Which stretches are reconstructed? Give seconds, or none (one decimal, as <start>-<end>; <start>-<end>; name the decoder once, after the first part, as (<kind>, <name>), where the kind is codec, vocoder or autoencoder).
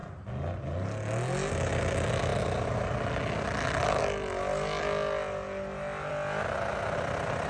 none